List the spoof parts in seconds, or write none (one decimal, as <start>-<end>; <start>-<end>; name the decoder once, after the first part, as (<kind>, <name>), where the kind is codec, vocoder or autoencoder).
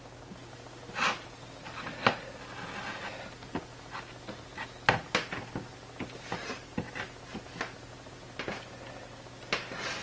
none